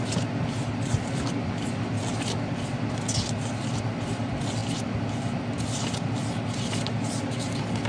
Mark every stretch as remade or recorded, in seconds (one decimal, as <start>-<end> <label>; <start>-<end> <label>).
0.0-7.9 recorded